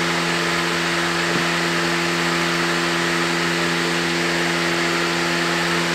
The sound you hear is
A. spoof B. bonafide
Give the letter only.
B